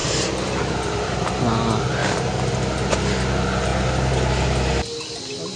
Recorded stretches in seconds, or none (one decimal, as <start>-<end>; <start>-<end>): 1.3-5.6